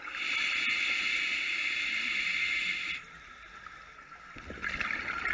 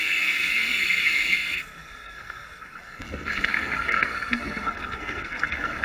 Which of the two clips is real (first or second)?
first